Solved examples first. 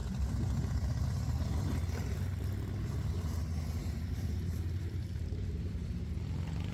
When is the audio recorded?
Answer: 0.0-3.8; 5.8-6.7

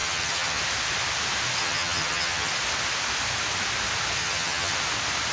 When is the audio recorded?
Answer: 0.6-1.6; 2.5-4.2; 4.8-5.3

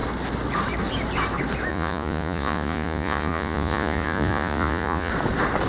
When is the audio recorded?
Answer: 0.0-1.7; 5.1-5.7